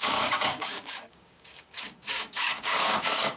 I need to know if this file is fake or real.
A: fake